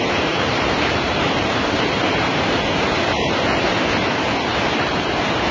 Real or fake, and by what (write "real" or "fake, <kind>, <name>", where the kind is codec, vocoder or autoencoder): fake, vocoder, BigVGAN v2